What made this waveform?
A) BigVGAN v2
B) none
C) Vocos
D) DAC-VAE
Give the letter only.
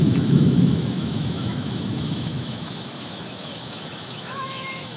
D